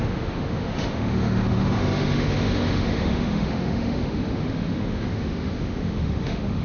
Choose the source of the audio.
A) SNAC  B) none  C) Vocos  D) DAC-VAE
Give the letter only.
D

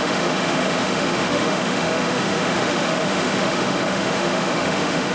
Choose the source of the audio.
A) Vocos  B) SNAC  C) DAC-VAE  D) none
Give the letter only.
C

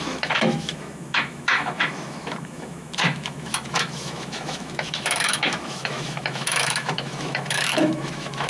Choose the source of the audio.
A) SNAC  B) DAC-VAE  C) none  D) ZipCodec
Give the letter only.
B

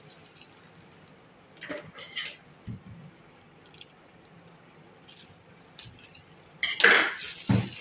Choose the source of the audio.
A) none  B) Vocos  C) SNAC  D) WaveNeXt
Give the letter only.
A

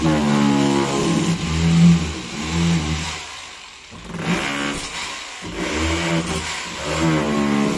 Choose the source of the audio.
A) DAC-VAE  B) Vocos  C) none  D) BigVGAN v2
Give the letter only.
C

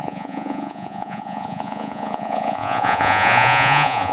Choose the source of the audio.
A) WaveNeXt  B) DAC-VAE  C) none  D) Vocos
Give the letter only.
D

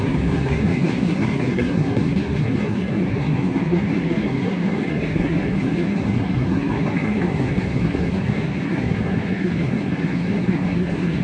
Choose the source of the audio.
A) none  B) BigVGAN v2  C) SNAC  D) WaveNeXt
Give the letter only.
C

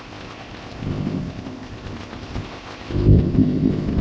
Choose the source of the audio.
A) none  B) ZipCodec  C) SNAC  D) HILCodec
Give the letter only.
B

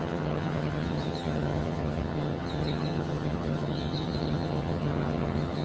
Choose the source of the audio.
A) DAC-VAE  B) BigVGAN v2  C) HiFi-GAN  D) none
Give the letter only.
C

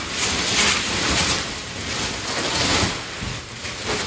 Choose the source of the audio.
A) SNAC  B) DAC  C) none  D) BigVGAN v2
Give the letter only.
C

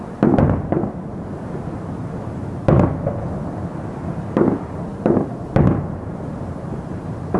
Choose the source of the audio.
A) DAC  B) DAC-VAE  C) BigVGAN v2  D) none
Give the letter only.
D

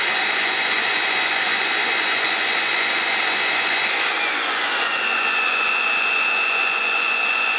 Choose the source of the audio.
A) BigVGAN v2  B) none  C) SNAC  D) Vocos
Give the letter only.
D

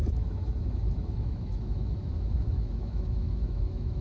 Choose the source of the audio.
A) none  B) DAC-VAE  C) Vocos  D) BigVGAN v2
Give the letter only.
B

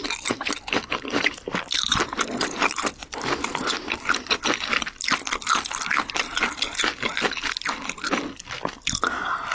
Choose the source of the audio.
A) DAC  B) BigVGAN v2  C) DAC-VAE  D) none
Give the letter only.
D